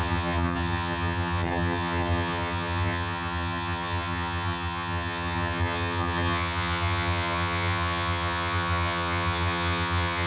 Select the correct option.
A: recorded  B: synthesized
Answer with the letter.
B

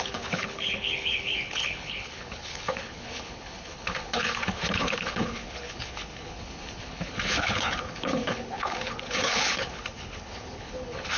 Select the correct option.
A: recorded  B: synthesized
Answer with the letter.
B